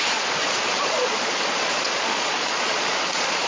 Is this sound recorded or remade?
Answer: remade